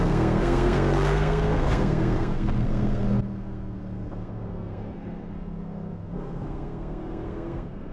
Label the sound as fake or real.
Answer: fake